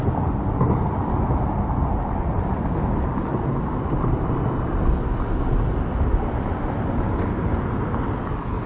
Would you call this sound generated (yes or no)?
no